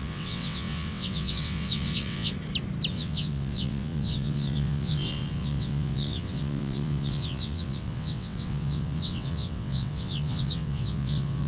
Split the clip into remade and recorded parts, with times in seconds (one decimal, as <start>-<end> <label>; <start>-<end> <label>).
0.0-2.3 remade; 2.3-2.9 recorded; 2.9-11.5 remade